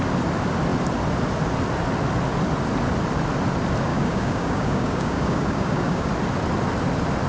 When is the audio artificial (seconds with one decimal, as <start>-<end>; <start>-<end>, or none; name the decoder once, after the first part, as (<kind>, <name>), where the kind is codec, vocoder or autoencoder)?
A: 3.9-6.1 (codec, DAC)